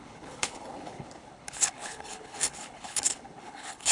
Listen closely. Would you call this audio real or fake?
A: fake